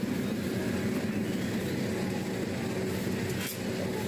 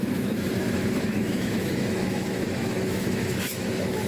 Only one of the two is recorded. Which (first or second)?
first